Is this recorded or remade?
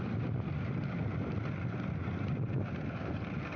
recorded